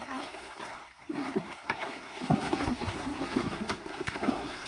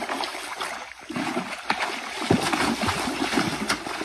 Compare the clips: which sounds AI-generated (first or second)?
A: first